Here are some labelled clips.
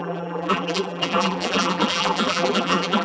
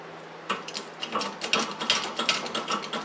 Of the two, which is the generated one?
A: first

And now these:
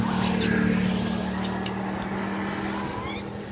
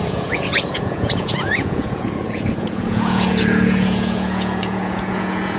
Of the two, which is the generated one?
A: second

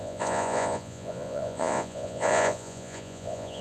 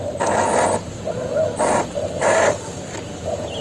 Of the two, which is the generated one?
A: first